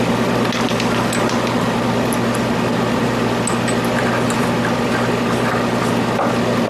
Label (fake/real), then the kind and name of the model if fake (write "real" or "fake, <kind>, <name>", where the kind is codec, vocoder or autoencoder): real